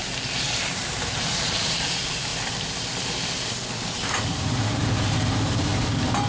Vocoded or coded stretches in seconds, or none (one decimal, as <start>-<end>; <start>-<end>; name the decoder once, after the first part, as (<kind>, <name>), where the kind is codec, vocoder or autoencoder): 0.6-2.3 (vocoder, BigVGAN v2); 4.1-5.7